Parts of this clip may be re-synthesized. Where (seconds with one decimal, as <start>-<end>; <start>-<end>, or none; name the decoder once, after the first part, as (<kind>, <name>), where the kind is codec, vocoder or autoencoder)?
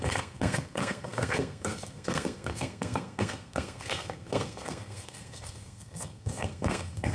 0.0-7.1 (codec, SNAC)